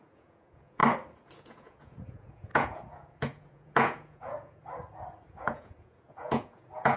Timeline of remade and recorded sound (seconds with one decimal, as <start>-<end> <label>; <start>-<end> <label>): 0.0-0.8 remade; 0.8-1.3 recorded; 1.3-4.6 remade; 4.6-5.3 recorded; 5.3-7.0 remade